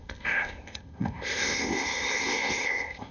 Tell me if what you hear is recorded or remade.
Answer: remade